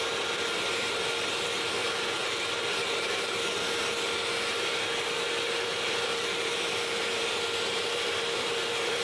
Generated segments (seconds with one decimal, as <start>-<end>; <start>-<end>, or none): 0.0-1.8; 5.5-9.0